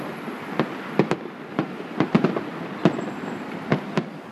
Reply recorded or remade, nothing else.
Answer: remade